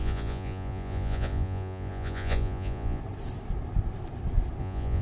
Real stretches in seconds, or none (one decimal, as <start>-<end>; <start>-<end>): 3.0-4.6